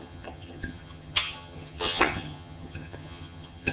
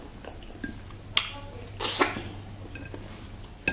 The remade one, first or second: first